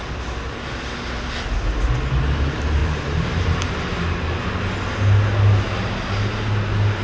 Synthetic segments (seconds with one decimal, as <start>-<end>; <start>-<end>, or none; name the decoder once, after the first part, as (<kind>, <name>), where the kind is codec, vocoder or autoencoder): 2.8-4.4 (vocoder, BigVGAN v2)